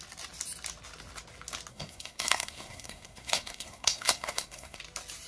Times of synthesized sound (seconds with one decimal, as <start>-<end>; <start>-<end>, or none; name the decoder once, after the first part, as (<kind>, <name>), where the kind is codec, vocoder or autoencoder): 1.7-4.8 (codec, SNAC)